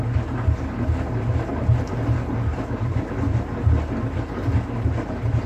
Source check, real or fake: real